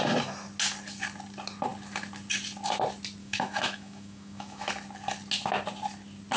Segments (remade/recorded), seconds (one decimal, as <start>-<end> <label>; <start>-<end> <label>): 0.0-3.2 recorded; 3.2-4.7 remade; 4.7-6.4 recorded

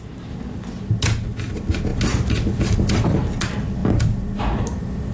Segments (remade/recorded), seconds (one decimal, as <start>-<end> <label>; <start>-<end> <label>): 0.0-5.1 recorded